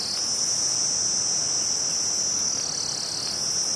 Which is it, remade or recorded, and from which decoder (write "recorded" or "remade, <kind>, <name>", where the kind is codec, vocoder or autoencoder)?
recorded